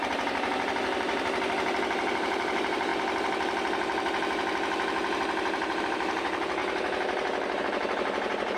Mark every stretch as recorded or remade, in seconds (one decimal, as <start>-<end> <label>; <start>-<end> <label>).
0.0-2.9 remade; 2.9-5.8 recorded; 5.8-6.6 remade; 6.6-7.6 recorded; 7.6-8.6 remade

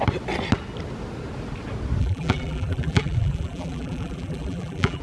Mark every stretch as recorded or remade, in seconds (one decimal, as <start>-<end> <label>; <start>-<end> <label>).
0.0-2.0 recorded; 2.0-5.0 remade

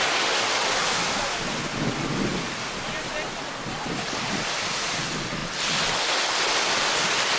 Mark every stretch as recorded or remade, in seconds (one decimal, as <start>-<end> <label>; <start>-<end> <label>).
0.0-2.3 recorded; 2.3-3.6 remade; 3.6-7.4 recorded

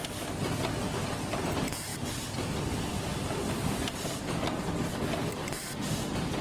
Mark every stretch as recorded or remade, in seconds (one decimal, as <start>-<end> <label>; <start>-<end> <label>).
0.0-6.4 recorded

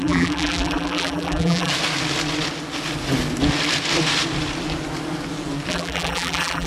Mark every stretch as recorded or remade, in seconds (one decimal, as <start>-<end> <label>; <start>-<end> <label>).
0.0-1.7 remade; 1.7-5.7 recorded; 5.7-6.7 remade

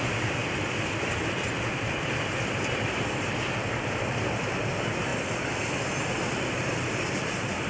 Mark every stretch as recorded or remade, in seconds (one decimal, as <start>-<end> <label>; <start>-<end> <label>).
0.0-7.7 remade